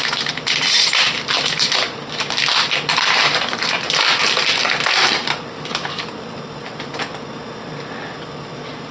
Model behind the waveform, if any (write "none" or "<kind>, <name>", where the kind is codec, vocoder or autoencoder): none